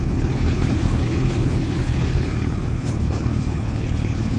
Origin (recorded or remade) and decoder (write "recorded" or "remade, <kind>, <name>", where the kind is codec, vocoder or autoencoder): remade, codec, HILCodec